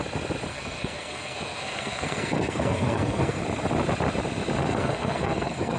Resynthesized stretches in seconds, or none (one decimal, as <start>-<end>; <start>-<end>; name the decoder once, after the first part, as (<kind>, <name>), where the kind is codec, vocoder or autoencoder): 0.5-3.4 (codec, SNAC); 4.6-5.8